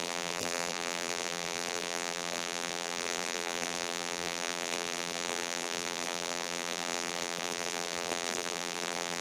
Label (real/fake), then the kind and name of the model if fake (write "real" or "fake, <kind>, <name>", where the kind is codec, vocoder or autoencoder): fake, vocoder, BigVGAN v2